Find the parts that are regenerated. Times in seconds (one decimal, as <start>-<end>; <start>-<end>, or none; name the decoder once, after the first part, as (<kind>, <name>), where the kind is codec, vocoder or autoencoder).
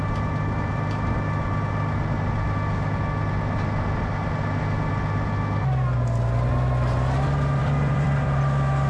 7.6-8.4 (vocoder, BigVGAN v2)